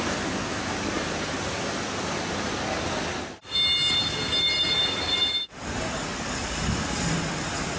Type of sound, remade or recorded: recorded